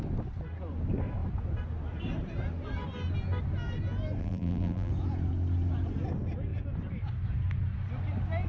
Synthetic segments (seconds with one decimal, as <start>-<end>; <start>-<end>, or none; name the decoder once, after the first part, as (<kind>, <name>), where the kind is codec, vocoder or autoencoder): 4.2-4.9 (vocoder, BigVGAN v2)